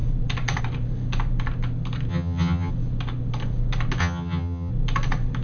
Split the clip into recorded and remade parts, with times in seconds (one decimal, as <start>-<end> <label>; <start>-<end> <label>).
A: 0.0-2.1 recorded; 2.1-2.7 remade; 2.7-4.0 recorded; 4.0-4.7 remade; 4.7-5.4 recorded